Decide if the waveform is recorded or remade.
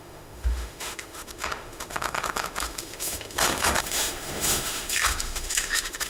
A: remade